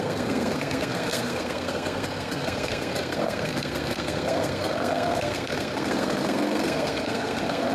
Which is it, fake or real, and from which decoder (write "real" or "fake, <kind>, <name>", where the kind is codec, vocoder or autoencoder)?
fake, codec, SNAC